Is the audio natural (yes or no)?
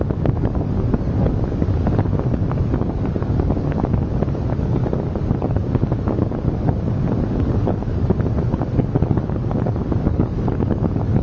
no